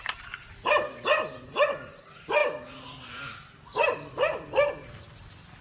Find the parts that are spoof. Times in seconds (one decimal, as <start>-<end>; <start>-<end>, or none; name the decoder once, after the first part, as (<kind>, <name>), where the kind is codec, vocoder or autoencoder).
none